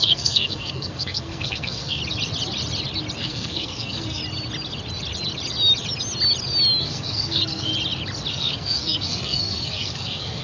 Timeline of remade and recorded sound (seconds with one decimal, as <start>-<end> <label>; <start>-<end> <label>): 0.0-2.0 remade; 2.0-3.2 recorded; 3.2-4.2 remade; 4.2-6.8 recorded; 6.8-7.7 remade; 7.7-8.3 recorded; 8.3-10.4 remade